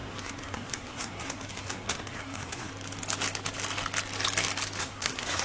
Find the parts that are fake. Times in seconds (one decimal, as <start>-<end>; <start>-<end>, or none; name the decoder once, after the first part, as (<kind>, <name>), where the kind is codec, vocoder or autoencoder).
0.0-2.7 (codec, SNAC); 4.8-5.4